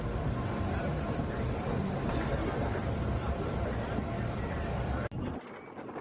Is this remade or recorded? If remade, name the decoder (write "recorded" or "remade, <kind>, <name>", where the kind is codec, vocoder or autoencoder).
recorded